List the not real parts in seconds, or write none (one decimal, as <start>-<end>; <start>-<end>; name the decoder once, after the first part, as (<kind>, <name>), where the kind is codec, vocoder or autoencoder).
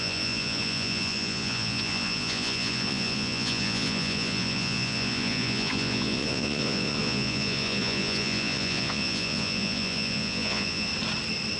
0.0-10.9 (vocoder, Vocos)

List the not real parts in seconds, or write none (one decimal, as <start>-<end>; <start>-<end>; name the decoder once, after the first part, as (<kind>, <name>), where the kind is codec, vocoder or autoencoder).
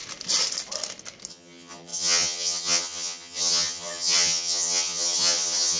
1.3-5.8 (vocoder, HiFi-GAN)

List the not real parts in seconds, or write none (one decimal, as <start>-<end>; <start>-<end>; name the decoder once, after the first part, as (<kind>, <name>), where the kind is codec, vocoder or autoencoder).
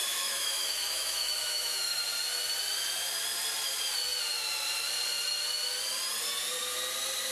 0.0-2.0 (autoencoder, DAC-VAE)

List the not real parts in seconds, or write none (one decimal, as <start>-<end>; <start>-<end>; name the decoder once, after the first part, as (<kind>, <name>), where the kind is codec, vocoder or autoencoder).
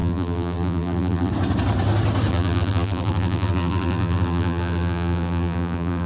0.0-1.3 (vocoder, BigVGAN v2); 2.3-6.1